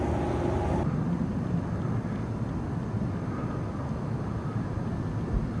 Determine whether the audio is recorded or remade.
recorded